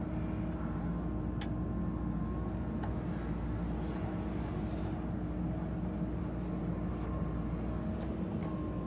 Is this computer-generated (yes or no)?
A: no